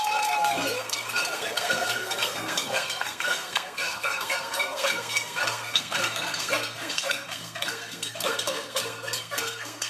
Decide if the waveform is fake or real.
fake